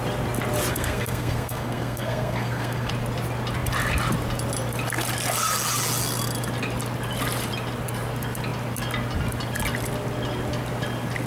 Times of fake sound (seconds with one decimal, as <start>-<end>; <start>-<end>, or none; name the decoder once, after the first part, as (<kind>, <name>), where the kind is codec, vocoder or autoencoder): 0.7-2.9 (codec, SNAC)